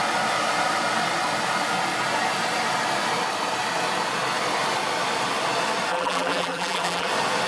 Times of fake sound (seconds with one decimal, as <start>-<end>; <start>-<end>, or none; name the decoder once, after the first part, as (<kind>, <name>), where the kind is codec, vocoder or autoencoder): 5.9-7.1 (vocoder, BigVGAN v2)